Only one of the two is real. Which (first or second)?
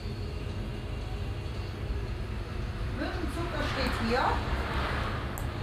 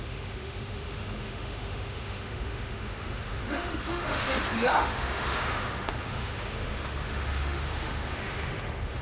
first